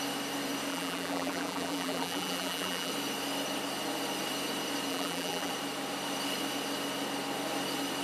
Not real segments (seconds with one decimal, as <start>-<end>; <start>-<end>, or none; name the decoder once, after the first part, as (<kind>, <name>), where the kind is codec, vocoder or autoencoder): 0.7-2.9 (vocoder, BigVGAN v2); 4.9-5.5